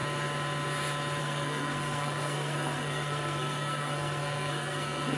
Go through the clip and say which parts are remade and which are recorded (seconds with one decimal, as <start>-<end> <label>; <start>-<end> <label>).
0.0-1.2 recorded; 1.2-5.2 remade